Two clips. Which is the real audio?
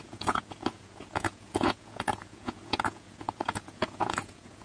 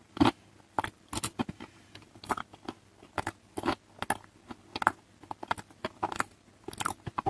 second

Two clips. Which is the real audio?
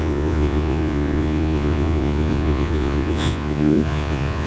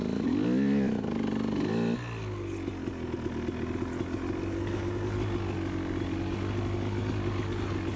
second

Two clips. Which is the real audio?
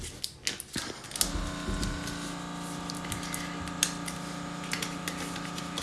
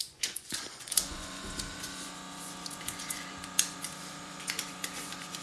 first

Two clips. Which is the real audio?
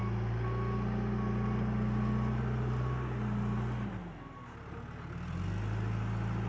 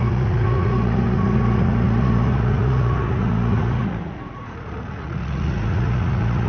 first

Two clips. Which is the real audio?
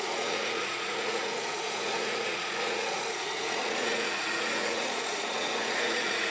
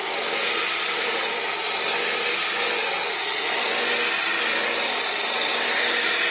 second